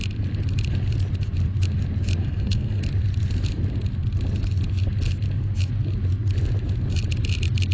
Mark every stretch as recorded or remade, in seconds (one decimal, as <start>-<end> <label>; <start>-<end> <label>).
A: 0.0-2.2 recorded; 2.2-2.8 remade; 2.8-7.7 recorded